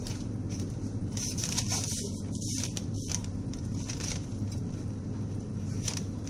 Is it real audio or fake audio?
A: fake